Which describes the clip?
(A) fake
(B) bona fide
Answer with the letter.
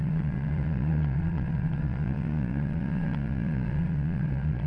A